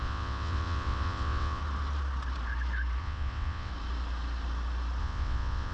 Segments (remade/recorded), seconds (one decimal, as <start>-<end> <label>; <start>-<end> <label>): 0.0-1.6 remade; 1.6-3.0 recorded; 3.0-3.7 remade; 3.7-5.0 recorded; 5.0-5.7 remade